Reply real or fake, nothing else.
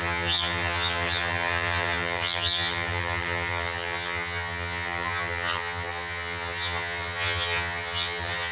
fake